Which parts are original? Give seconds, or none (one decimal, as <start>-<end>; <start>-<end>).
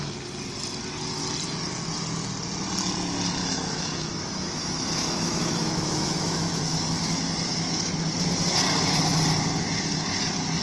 0.0-3.4; 7.9-10.6